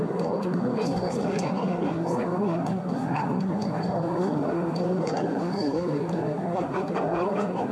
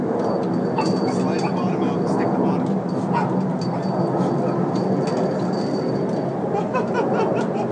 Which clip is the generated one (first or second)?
first